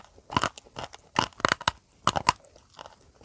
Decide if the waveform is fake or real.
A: real